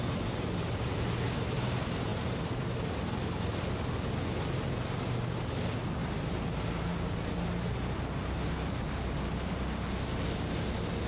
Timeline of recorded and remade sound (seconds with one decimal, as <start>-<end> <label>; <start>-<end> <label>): 0.0-11.1 recorded